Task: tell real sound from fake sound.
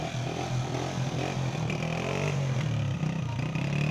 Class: real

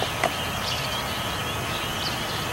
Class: real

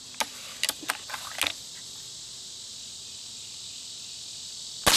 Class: real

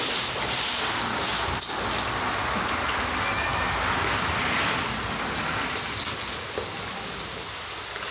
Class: real